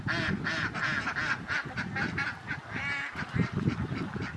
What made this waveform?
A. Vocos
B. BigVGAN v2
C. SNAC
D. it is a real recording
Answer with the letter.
D